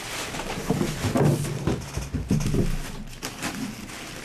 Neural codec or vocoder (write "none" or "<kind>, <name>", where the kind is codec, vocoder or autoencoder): none